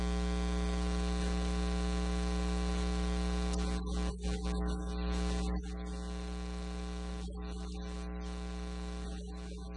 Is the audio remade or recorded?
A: recorded